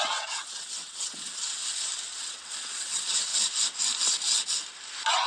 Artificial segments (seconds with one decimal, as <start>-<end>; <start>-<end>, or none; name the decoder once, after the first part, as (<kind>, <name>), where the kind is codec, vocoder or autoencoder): 0.0-1.6 (vocoder, WaveNeXt); 2.2-3.3